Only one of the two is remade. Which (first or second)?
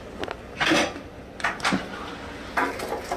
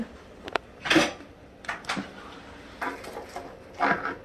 second